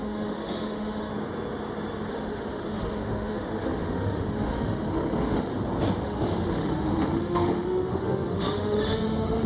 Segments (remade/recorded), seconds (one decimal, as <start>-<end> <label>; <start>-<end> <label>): 0.0-1.1 remade; 1.1-2.1 recorded; 2.1-5.5 remade; 5.5-6.0 recorded; 6.0-9.5 remade